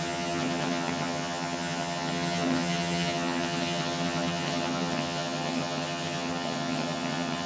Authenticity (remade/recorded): remade